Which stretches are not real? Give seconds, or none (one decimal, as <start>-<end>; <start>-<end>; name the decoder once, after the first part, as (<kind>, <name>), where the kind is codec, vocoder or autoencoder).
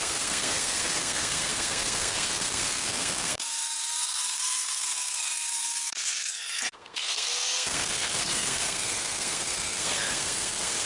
0.0-10.9 (codec, SNAC)